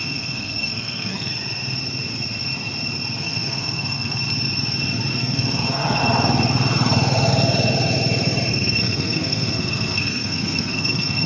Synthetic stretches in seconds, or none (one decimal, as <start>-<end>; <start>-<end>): 0.0-1.3; 3.2-4.2; 5.2-6.0; 8.5-11.3